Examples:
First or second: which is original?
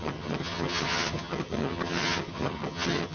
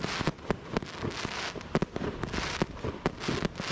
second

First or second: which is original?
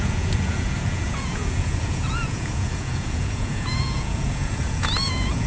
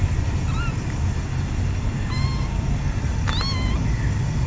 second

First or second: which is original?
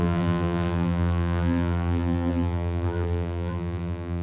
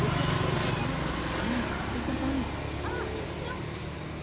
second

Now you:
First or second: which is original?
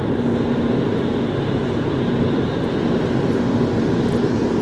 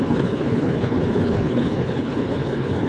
first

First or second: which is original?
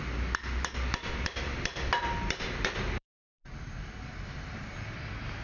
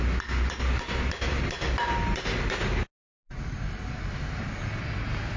second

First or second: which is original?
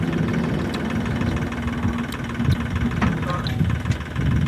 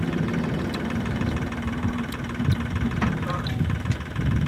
first